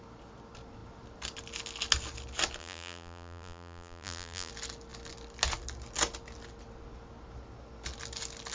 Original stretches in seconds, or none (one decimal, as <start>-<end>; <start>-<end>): 0.0-2.6; 4.5-8.5